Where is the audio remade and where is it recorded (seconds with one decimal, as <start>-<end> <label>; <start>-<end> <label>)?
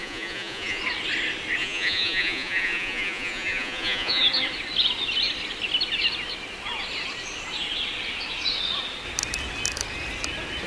0.0-0.8 remade; 0.8-1.6 recorded; 1.6-4.2 remade; 4.2-10.7 recorded